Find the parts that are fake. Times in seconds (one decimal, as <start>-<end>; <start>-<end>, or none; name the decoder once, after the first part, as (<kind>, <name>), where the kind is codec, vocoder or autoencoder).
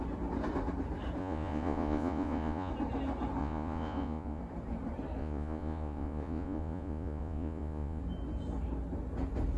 1.2-2.7 (vocoder, Vocos); 3.4-4.4; 5.2-8.0